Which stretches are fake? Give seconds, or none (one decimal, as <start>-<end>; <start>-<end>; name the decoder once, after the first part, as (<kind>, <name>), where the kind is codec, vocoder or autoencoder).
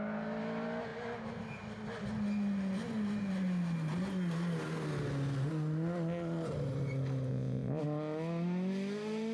7.3-7.8 (vocoder, Vocos)